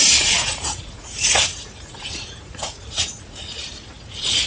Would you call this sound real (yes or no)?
no